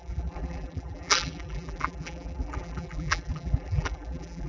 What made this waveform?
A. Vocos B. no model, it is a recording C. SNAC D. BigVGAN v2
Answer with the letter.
D